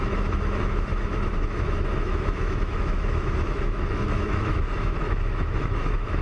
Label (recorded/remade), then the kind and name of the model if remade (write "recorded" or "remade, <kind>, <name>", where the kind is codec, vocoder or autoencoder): remade, autoencoder, DAC-VAE